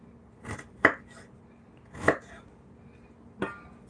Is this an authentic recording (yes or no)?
yes